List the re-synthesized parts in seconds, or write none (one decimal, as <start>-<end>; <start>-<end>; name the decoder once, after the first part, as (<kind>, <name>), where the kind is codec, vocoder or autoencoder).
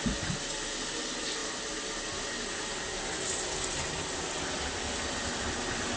none